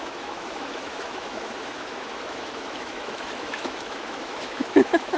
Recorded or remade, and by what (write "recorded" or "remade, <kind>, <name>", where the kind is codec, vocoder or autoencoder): remade, autoencoder, DAC-VAE